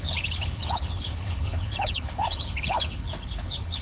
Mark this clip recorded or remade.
remade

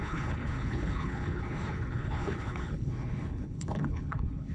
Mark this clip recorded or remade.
remade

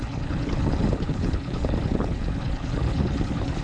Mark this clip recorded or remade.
remade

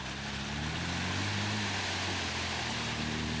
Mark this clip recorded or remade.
recorded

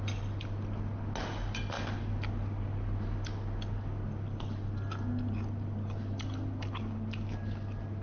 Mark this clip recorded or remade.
recorded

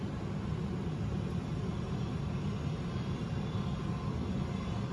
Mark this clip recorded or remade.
recorded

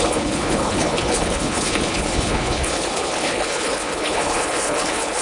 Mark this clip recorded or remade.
remade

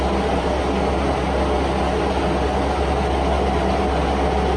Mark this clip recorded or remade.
recorded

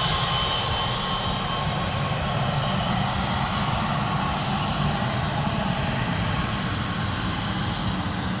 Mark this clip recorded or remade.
recorded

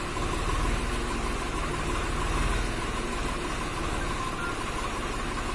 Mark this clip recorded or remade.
recorded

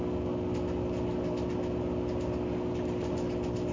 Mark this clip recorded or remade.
recorded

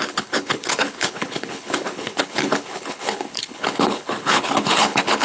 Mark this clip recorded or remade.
remade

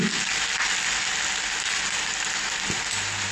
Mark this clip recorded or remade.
recorded